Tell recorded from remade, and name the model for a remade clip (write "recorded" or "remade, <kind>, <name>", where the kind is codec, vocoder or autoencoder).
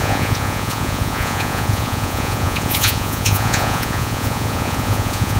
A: remade, vocoder, Vocos